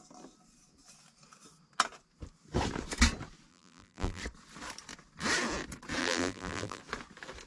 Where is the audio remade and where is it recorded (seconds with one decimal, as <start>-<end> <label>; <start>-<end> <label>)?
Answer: 0.0-3.5 recorded; 3.5-4.2 remade; 4.2-6.0 recorded; 6.0-6.8 remade; 6.8-7.5 recorded